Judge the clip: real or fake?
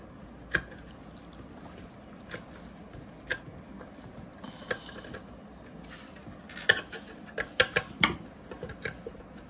real